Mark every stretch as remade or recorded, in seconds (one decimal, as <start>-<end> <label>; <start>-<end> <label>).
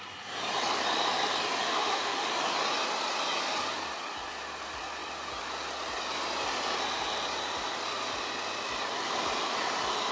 0.0-1.7 recorded; 1.7-2.3 remade; 2.3-10.1 recorded